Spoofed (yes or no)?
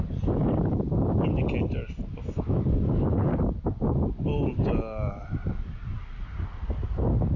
no